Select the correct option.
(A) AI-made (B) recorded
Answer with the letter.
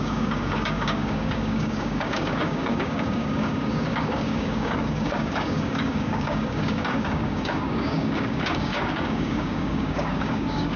A